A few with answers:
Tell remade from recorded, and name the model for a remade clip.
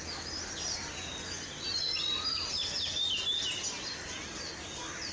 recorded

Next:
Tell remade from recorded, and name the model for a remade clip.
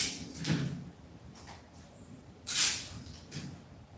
recorded